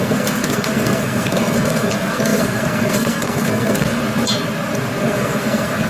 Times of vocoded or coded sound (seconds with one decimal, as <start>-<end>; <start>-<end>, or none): 0.0-4.0; 5.0-5.9